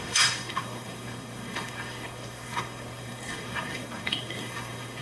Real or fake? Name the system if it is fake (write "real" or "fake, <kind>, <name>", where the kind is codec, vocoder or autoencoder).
fake, codec, SNAC